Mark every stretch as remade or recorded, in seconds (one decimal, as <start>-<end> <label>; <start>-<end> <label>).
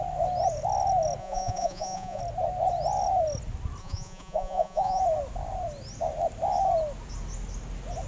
0.0-1.2 recorded; 1.2-2.2 remade; 2.2-3.8 recorded; 3.8-5.0 remade; 5.0-8.1 recorded